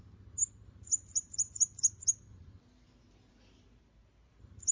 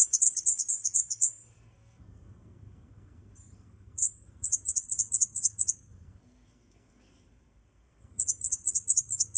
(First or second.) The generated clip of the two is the second